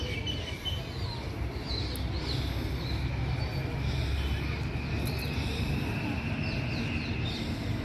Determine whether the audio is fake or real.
real